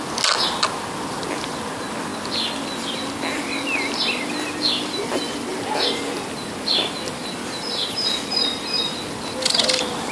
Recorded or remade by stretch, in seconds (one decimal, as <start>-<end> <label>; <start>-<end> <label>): 0.0-10.1 recorded